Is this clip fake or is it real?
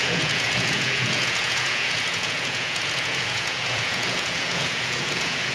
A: fake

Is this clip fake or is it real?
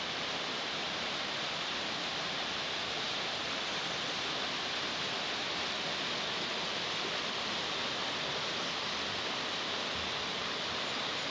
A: real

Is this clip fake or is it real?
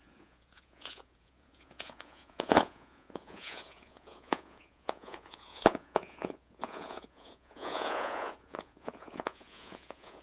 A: fake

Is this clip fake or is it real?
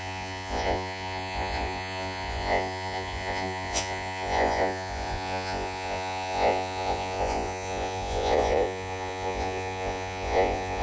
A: fake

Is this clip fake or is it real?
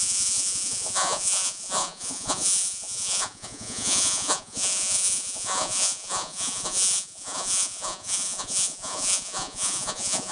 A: fake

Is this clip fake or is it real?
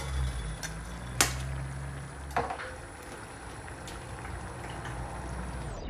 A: real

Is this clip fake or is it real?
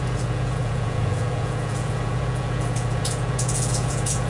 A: fake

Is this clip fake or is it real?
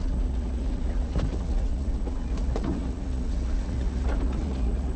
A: fake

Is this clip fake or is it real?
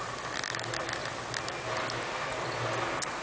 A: real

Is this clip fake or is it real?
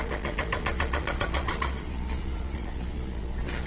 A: fake